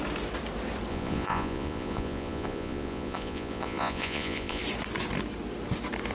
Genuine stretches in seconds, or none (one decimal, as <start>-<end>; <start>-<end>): 0.0-0.9; 4.6-6.1